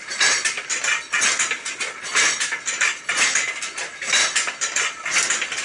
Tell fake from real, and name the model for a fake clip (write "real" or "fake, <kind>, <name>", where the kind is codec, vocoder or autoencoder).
real